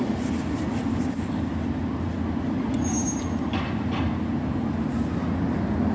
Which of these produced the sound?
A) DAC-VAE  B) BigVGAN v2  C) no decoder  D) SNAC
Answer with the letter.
C